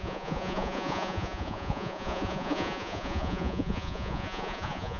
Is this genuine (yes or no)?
no